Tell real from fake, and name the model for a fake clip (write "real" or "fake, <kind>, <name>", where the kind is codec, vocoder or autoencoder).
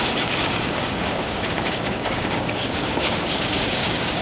fake, codec, DAC